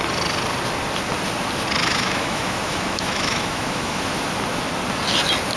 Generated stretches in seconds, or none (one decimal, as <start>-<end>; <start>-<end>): 1.8-4.0